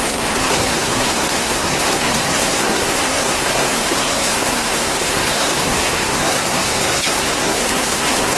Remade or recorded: remade